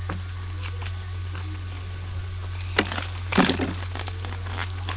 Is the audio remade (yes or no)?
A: no